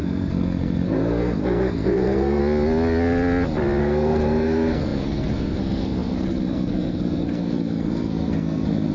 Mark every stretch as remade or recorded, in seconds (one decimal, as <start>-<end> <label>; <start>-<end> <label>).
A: 0.0-2.4 remade; 2.4-3.8 recorded; 3.8-8.9 remade